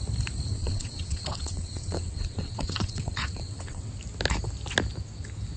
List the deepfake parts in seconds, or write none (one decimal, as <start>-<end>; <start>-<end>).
0.5-3.9